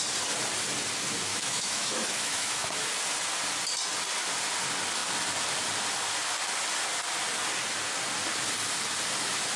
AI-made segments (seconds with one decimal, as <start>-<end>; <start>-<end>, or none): 1.3-2.9